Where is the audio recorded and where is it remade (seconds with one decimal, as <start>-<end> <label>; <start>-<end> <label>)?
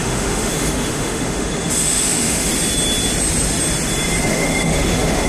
0.0-2.5 remade; 2.5-4.3 recorded; 4.3-5.3 remade